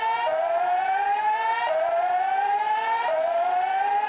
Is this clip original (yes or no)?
yes